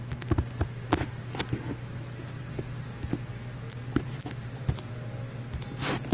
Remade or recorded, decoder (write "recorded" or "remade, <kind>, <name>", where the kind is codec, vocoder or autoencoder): recorded